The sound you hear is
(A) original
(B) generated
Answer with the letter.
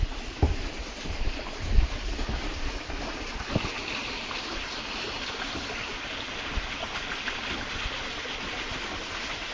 A